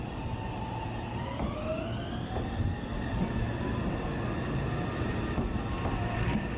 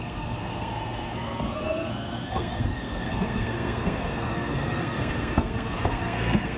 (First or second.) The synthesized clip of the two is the second